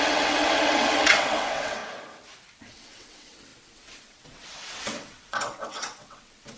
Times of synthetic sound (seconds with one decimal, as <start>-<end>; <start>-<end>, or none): 0.0-1.8; 2.6-6.6